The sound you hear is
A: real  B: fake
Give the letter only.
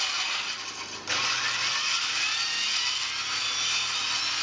A